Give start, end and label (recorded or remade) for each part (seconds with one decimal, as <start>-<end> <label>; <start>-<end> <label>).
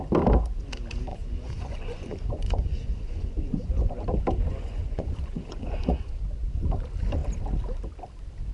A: 0.0-1.1 recorded; 1.1-4.0 remade; 4.0-4.5 recorded; 4.5-6.2 remade; 6.2-8.5 recorded